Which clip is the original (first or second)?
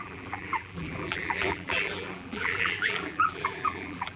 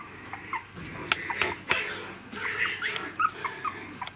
second